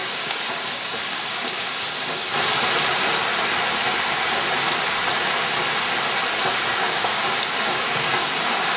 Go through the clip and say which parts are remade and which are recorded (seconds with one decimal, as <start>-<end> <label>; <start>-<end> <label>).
0.0-2.3 remade; 2.3-6.5 recorded; 6.5-8.8 remade

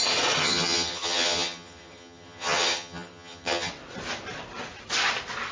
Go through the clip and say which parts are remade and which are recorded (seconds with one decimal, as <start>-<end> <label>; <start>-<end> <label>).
0.0-0.4 recorded; 0.4-3.7 remade; 3.7-5.5 recorded

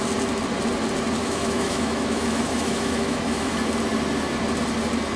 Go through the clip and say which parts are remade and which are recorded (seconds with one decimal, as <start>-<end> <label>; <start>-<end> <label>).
0.0-1.2 recorded; 1.2-3.6 remade; 3.6-5.2 recorded

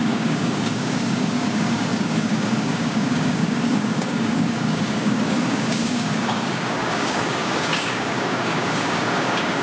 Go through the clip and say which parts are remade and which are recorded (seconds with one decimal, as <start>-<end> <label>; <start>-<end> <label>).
0.0-9.6 remade

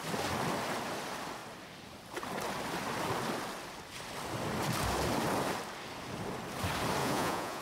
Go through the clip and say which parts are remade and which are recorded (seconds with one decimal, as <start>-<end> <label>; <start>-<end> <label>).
0.0-7.0 recorded; 7.0-7.6 remade

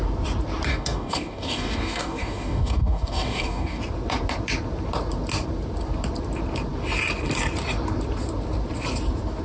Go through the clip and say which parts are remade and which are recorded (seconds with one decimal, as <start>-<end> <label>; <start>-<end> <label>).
0.0-0.7 recorded; 0.7-3.8 remade; 3.8-9.4 recorded

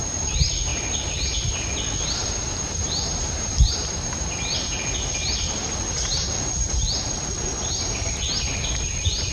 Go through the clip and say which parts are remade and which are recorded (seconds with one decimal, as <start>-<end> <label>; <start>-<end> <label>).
0.0-2.2 recorded; 2.2-4.8 remade; 4.8-9.3 recorded